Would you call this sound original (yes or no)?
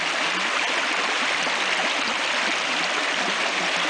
yes